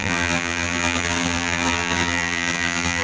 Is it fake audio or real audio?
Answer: fake